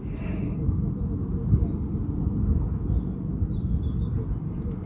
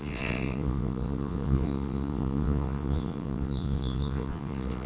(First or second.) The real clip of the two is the first